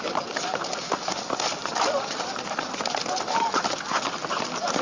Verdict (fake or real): real